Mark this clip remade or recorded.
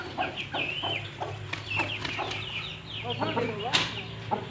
recorded